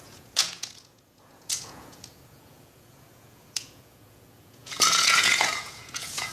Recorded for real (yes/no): no